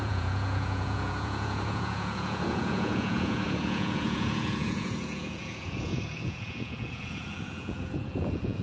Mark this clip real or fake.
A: fake